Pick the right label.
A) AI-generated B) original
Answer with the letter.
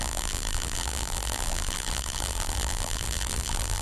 A